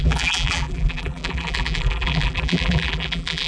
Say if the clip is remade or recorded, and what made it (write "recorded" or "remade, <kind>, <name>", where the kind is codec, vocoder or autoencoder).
remade, vocoder, BigVGAN v2